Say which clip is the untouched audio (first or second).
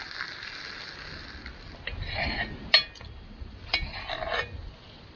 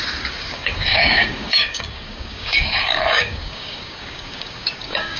first